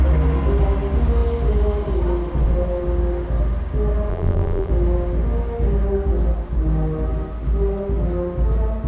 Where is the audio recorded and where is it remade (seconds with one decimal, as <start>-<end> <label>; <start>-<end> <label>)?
0.0-4.1 recorded; 4.1-4.7 remade; 4.7-8.9 recorded